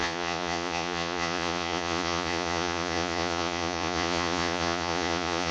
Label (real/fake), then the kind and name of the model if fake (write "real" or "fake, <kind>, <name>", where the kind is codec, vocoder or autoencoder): fake, vocoder, Vocos